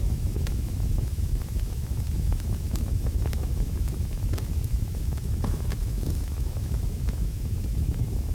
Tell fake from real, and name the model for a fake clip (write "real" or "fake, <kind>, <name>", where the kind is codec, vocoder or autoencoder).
fake, autoencoder, DAC-VAE